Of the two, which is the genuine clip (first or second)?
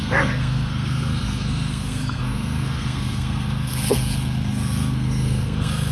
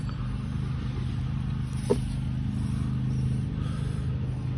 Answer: second